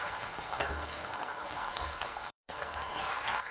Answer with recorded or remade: remade